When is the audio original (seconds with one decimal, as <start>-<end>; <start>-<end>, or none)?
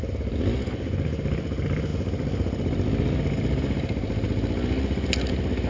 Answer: 0.0-5.7